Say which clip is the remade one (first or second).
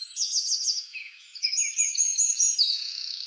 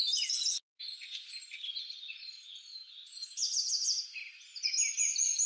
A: first